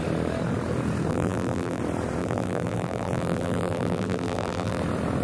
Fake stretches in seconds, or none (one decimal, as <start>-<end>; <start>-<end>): 1.1-1.8; 2.2-4.8